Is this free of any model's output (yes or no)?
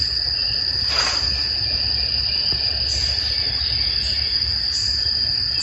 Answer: yes